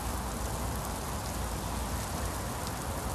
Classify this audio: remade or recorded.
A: recorded